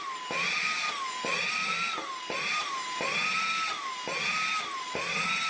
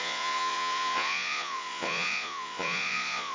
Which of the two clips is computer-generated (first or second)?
second